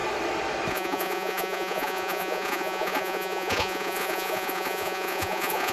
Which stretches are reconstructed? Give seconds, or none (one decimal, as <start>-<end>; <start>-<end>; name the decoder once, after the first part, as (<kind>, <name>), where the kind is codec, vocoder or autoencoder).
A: 0.7-5.7 (vocoder, Vocos)